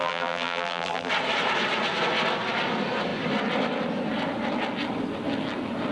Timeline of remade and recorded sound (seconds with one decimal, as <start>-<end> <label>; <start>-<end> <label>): 0.0-1.1 remade; 1.1-5.9 recorded